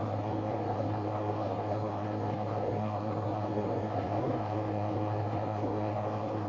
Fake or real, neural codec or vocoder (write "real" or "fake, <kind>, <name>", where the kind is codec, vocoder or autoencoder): fake, codec, SNAC